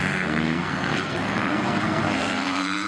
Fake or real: fake